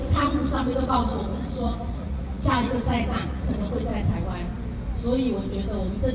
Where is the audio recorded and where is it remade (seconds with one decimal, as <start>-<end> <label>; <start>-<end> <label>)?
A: 0.0-3.9 remade; 3.9-6.1 recorded